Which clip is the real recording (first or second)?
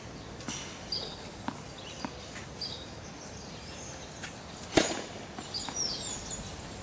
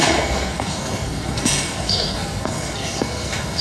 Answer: first